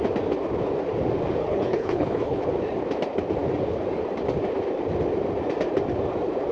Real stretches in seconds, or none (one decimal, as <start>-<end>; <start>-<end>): 0.0-1.4; 2.4-6.5